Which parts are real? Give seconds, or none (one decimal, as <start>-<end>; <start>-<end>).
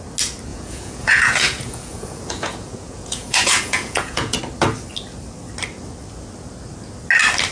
0.0-0.5; 4.4-7.5